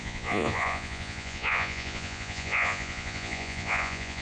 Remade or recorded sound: remade